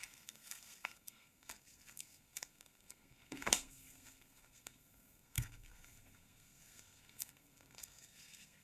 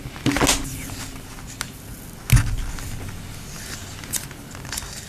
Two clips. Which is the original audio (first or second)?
second